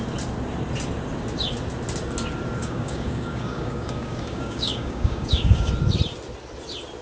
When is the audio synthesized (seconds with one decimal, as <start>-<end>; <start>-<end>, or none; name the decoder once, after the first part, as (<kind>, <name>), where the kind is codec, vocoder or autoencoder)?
2.6-5.7 (codec, DAC)